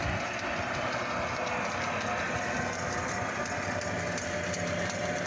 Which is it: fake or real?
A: real